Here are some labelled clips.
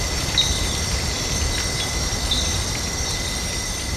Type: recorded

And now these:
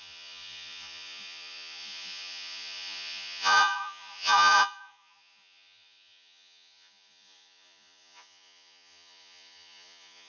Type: remade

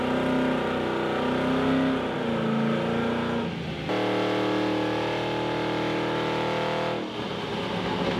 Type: recorded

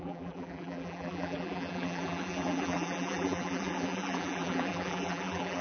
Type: remade